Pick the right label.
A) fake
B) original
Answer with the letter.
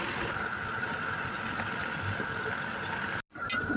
B